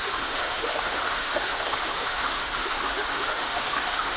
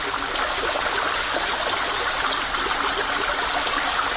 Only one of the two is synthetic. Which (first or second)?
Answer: first